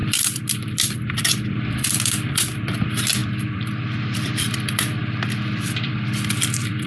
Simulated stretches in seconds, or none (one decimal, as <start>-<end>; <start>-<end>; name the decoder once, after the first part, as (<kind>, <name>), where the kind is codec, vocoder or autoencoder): 0.0-6.9 (vocoder, BigVGAN v2)